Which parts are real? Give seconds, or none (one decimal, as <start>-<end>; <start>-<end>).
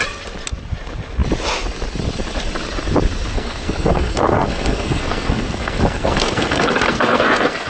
0.0-3.3